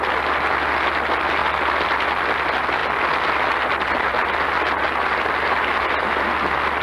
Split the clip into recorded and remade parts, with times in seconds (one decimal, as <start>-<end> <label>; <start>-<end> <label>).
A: 0.0-6.8 recorded